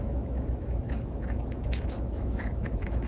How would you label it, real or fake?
fake